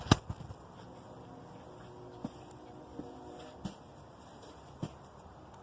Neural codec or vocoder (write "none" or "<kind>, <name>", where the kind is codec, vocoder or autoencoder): none